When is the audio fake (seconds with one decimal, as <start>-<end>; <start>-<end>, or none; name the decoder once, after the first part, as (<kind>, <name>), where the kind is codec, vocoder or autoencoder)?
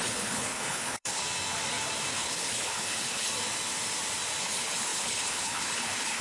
0.0-1.2 (codec, HILCodec); 2.1-3.3; 4.4-6.2